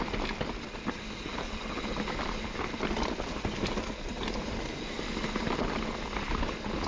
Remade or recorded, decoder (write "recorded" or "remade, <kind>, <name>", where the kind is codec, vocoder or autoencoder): recorded